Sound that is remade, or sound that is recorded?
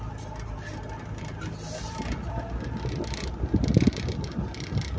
recorded